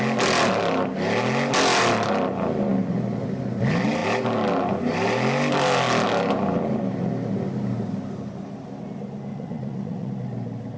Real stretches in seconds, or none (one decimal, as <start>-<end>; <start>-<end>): 0.0-9.3; 10.1-10.8